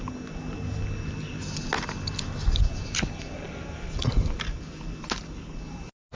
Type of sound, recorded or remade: recorded